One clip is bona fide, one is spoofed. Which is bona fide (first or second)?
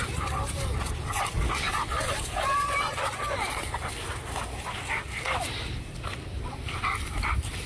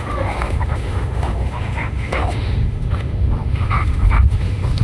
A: first